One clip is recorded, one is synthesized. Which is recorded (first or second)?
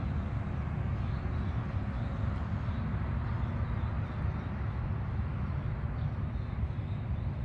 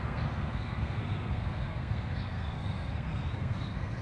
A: first